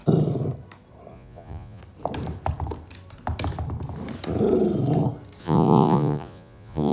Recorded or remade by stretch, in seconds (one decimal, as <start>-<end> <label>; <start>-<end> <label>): 0.0-1.1 recorded; 1.1-1.8 remade; 1.8-5.4 recorded; 5.4-6.9 remade

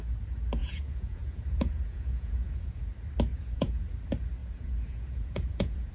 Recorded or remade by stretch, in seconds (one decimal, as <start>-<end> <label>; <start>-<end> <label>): 0.0-0.6 recorded; 0.6-2.8 remade; 2.8-3.3 recorded; 3.3-3.9 remade; 3.9-4.4 recorded; 4.4-5.9 remade

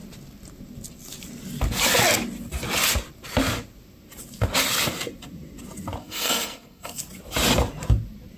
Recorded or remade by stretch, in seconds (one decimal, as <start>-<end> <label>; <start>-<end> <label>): 0.0-6.0 recorded; 6.0-7.0 remade; 7.0-8.4 recorded

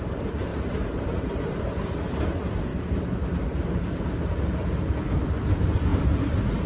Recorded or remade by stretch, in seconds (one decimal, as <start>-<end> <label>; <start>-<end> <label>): 0.0-2.7 remade; 2.7-5.5 recorded; 5.5-6.7 remade

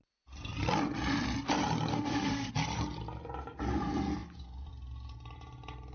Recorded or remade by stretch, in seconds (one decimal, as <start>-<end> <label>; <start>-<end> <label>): 0.0-1.9 recorded; 1.9-2.5 remade; 2.5-5.9 recorded

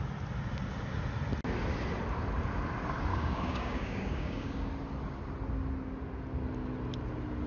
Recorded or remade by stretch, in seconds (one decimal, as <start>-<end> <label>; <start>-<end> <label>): 0.0-3.1 recorded; 3.1-4.7 remade; 4.7-7.5 recorded